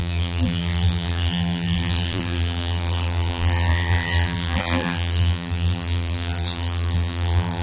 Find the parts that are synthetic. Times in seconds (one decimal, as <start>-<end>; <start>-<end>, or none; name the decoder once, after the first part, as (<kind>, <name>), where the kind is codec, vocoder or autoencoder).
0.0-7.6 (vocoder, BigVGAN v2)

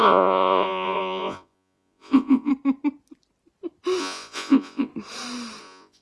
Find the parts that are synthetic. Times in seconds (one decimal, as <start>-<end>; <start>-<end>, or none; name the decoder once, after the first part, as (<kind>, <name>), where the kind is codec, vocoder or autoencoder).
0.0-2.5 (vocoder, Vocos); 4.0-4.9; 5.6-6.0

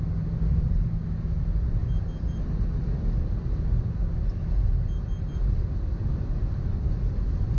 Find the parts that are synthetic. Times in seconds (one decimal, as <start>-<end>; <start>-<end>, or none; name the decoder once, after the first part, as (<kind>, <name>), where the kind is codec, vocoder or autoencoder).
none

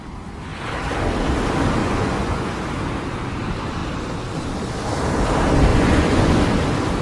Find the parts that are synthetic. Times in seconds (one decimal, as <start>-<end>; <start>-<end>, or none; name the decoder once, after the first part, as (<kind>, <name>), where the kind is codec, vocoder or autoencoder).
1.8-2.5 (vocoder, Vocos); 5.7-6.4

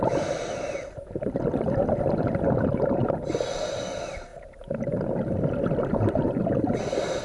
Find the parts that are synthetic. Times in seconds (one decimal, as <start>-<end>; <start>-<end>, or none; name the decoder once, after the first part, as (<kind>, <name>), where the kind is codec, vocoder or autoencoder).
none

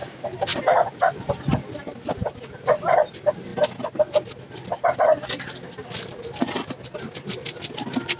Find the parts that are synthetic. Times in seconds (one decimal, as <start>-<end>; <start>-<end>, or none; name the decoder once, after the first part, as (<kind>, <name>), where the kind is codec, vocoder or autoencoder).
none

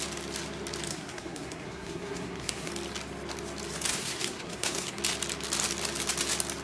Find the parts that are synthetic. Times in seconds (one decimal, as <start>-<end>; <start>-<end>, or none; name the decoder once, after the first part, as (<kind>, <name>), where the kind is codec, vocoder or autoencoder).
0.9-2.7 (codec, SNAC); 3.9-5.0

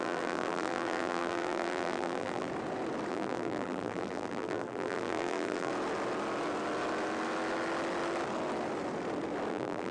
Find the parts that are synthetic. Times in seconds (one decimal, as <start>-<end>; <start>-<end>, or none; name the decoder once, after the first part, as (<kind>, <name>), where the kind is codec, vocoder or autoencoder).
0.0-2.5 (vocoder, BigVGAN v2); 3.1-5.7; 9.5-9.9